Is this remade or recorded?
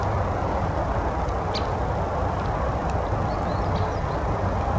recorded